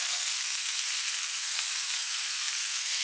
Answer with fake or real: fake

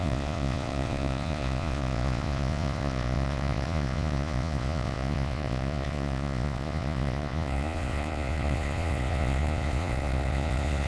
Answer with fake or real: fake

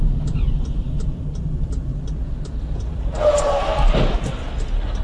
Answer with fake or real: fake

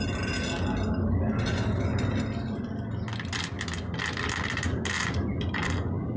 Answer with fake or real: real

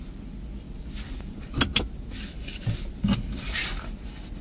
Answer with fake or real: real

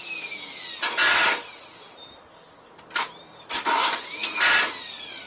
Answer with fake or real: real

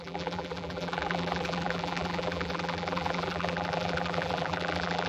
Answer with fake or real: fake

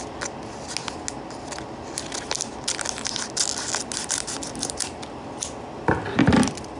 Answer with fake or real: real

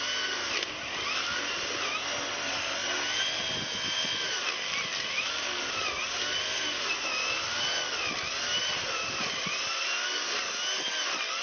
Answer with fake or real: real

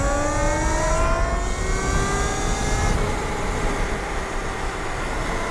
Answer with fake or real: real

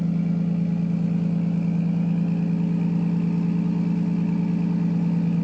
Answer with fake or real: real